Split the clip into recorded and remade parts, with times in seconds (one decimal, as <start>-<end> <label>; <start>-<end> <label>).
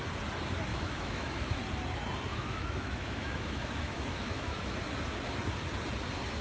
0.0-0.7 recorded; 0.7-1.6 remade; 1.6-2.3 recorded; 2.3-4.8 remade; 4.8-6.4 recorded